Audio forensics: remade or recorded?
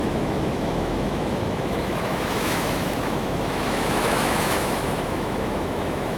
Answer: remade